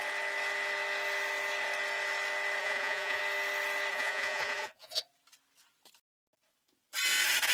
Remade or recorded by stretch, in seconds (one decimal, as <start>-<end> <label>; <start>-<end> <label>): 0.0-2.6 recorded; 2.6-3.2 remade; 3.2-3.9 recorded; 3.9-5.0 remade; 5.0-7.5 recorded